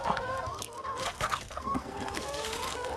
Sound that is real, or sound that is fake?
fake